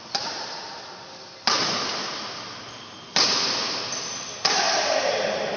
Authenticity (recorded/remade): recorded